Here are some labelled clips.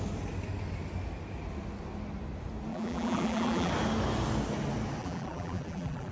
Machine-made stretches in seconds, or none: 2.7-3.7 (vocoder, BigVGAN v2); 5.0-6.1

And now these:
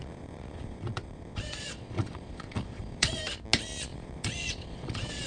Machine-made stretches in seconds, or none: 0.0-3.2 (vocoder, Vocos); 3.9-5.3

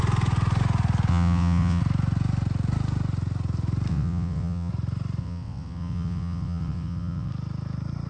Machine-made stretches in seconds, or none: 1.1-1.8 (vocoder, WaveNeXt); 3.9-4.7; 5.2-7.3

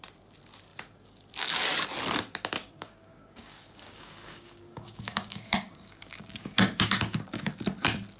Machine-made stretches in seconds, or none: 2.6-7.5 (codec, DAC)

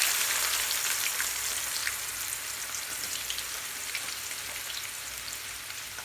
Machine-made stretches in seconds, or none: none

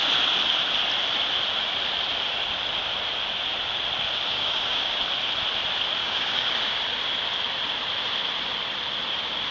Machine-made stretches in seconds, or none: 4.3-5.0 (codec, DAC); 6.0-6.8